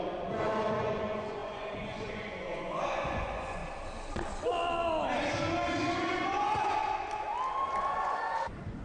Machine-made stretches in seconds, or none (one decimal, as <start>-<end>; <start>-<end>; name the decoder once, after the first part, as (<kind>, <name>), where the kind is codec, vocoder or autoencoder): 0.0-3.6 (vocoder, Vocos); 5.8-6.8; 7.8-8.8